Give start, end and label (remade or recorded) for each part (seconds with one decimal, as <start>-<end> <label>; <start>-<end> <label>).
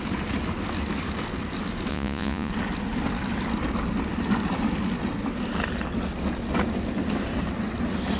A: 0.0-1.9 recorded; 1.9-2.5 remade; 2.5-8.2 recorded